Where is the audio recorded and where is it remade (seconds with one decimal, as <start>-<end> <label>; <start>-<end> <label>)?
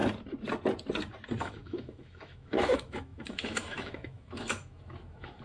0.0-1.4 recorded; 1.4-5.4 remade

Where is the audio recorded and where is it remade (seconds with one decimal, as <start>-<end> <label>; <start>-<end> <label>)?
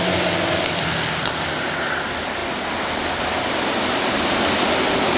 0.0-5.2 recorded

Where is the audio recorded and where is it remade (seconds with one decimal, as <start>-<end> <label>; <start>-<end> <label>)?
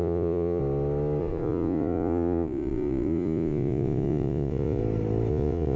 0.0-0.6 remade; 0.6-1.2 recorded; 1.2-4.8 remade; 4.8-5.3 recorded; 5.3-5.8 remade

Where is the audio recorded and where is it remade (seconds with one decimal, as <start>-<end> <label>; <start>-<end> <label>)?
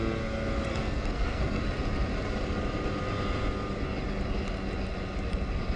0.0-0.7 recorded; 0.7-1.6 remade; 1.6-5.8 recorded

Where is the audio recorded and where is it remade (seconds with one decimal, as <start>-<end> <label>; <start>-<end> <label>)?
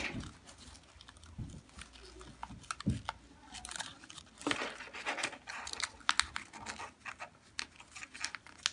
0.0-8.7 recorded